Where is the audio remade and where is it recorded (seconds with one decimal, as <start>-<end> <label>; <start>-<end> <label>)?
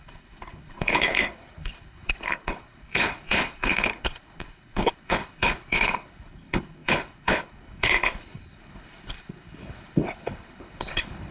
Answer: 0.0-11.3 remade